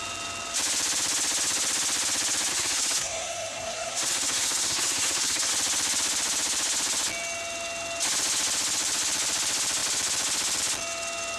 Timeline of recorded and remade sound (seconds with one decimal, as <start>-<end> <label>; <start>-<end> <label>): 0.0-2.5 recorded; 2.5-5.5 remade; 5.5-11.4 recorded